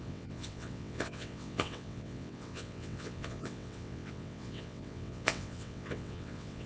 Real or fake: fake